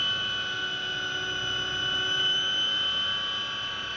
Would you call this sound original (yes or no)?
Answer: yes